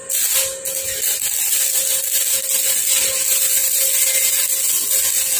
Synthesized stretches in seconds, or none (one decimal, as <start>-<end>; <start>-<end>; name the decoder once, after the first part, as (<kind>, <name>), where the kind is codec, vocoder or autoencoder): none